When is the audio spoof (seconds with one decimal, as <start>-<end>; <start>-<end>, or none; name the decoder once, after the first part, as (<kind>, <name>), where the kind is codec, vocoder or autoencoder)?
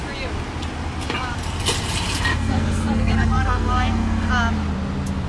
2.3-4.3 (codec, SNAC)